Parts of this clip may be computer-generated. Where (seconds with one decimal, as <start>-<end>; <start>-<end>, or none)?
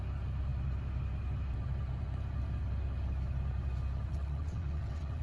4.1-5.2